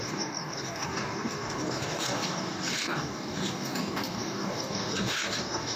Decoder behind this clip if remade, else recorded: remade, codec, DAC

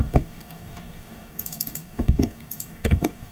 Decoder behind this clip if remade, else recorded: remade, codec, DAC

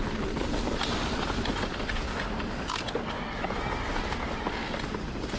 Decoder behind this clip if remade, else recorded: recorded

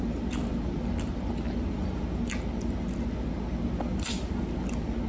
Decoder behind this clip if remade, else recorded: recorded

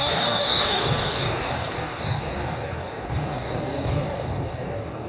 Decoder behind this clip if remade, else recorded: remade, codec, DAC